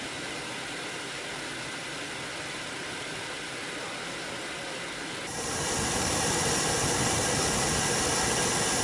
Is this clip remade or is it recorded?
recorded